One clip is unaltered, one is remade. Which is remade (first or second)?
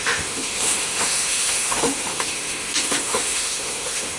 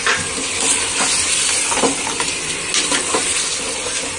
first